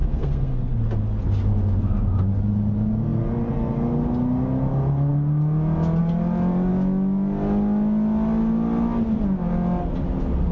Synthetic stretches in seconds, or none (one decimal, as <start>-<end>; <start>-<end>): 0.0-0.7